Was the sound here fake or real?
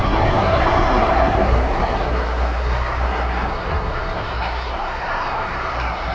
fake